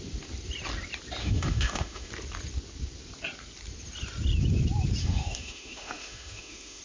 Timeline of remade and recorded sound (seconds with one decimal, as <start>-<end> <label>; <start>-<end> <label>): 0.0-1.2 recorded; 1.2-2.1 remade; 2.1-5.0 recorded; 5.0-6.8 remade